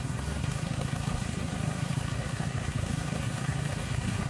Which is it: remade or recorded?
remade